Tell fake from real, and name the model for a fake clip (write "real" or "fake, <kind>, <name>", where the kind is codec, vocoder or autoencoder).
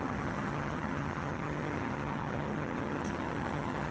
fake, vocoder, HiFi-GAN